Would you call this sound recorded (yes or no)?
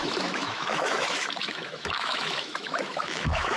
no